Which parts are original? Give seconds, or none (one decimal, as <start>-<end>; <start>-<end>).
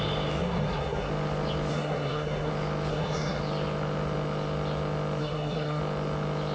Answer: 0.0-0.4; 1.1-1.7; 2.5-2.9; 3.4-5.2; 5.8-6.5